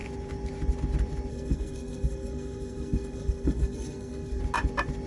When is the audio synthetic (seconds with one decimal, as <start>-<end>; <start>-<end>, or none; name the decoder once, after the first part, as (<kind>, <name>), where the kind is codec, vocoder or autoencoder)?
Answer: 1.3-4.4 (codec, SNAC)